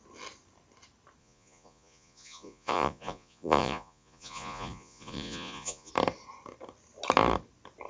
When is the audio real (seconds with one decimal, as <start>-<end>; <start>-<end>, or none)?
0.0-1.2; 5.9-7.9